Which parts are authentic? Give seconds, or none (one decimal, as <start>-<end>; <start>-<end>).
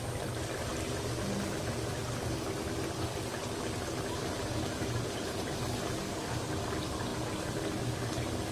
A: 0.0-8.5